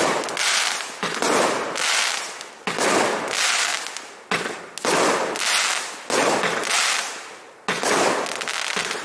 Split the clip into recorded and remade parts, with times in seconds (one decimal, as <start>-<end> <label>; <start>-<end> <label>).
0.0-9.0 recorded